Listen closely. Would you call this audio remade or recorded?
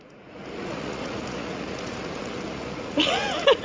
remade